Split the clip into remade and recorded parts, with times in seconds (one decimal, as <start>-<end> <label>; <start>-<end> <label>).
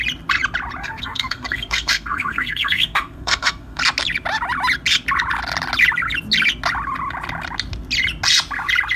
0.0-0.8 recorded; 0.8-3.8 remade; 3.8-9.0 recorded